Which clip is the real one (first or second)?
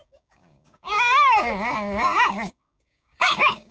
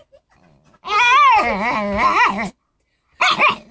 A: second